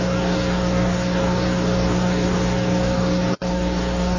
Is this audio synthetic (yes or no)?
yes